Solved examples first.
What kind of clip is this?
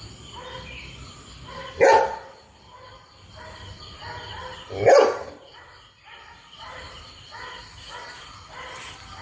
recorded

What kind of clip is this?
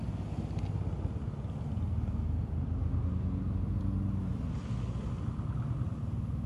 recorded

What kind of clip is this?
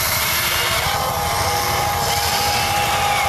recorded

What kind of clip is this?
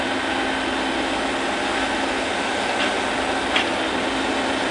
recorded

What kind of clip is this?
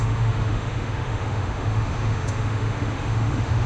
remade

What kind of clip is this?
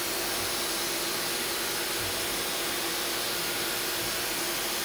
recorded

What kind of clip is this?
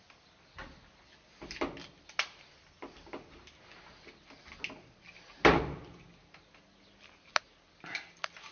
recorded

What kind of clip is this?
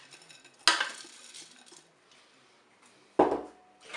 recorded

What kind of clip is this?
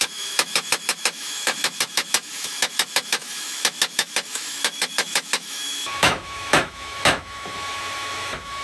remade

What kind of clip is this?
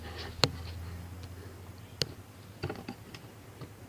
recorded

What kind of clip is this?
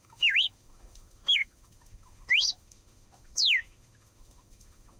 remade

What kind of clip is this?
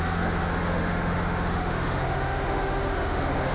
remade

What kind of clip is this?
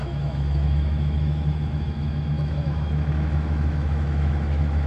remade